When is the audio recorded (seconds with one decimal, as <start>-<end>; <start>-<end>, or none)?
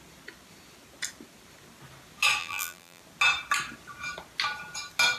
0.0-2.4; 3.0-5.2